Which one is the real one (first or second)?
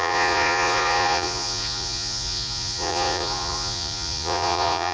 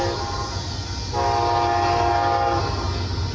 second